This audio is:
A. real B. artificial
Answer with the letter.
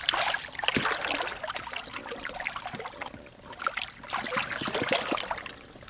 A